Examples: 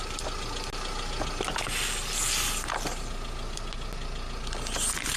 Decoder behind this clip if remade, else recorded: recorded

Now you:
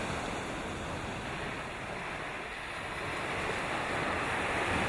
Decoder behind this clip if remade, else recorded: recorded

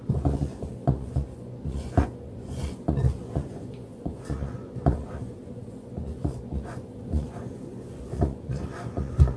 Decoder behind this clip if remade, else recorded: remade, vocoder, Vocos